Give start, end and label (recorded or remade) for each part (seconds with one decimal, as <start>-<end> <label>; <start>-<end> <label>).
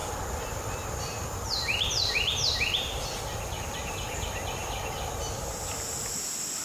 0.0-6.6 recorded